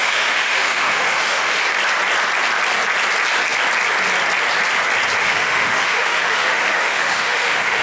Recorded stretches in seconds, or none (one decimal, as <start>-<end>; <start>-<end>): 1.6-5.2